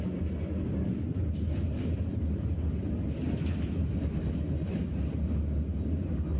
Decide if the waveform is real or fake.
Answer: real